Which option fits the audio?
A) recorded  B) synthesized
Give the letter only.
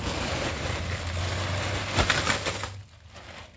A